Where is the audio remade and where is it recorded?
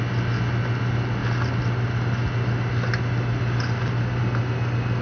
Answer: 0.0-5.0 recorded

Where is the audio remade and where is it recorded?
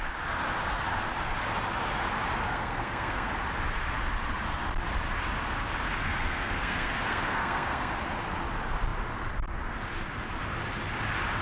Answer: 0.0-2.5 recorded; 2.5-3.3 remade; 3.3-6.0 recorded; 6.0-7.9 remade; 7.9-11.4 recorded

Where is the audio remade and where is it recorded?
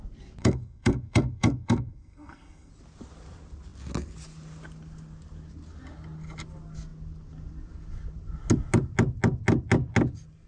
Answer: 0.0-0.4 recorded; 0.4-2.7 remade; 2.7-10.5 recorded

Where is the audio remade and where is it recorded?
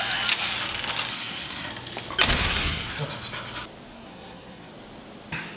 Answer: 0.0-1.1 recorded; 1.1-1.7 remade; 1.7-2.4 recorded; 2.4-3.0 remade; 3.0-3.9 recorded; 3.9-4.7 remade; 4.7-5.6 recorded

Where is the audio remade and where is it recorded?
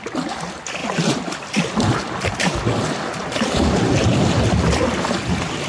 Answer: 0.0-5.7 recorded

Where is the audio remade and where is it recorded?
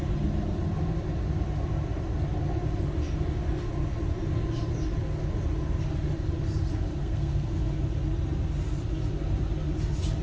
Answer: 0.0-7.0 recorded; 7.0-7.6 remade; 7.6-10.2 recorded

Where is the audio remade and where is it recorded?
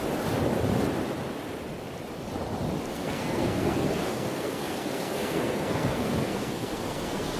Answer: 0.0-2.9 recorded; 2.9-7.4 remade